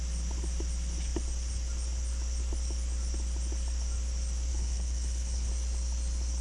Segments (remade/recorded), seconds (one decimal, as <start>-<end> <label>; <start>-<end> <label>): 0.0-4.5 recorded; 4.5-5.5 remade; 5.5-6.4 recorded